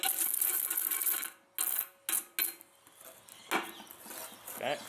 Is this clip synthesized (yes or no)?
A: no